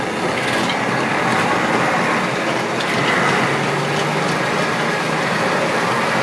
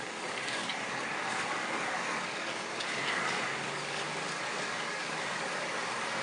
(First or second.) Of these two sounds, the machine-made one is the second